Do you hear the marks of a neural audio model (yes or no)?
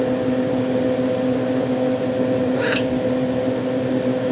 no